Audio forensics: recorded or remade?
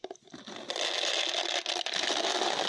recorded